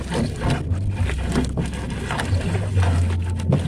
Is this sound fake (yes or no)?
no